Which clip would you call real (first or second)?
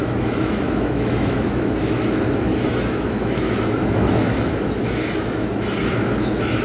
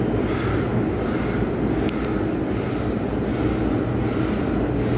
second